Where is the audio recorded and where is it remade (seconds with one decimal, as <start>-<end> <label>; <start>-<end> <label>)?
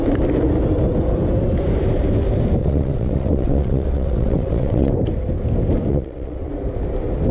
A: 0.0-2.6 recorded; 2.6-4.9 remade; 4.9-5.9 recorded; 5.9-6.5 remade; 6.5-7.3 recorded